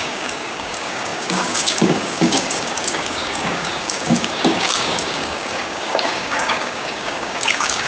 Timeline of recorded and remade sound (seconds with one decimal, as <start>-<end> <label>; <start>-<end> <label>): 0.0-7.9 remade